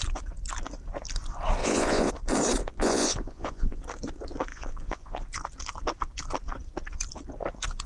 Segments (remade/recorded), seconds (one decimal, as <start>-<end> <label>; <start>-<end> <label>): 0.0-1.6 recorded; 1.6-2.1 remade; 2.1-2.6 recorded; 2.6-3.8 remade; 3.8-4.5 recorded; 4.5-5.2 remade; 5.2-7.9 recorded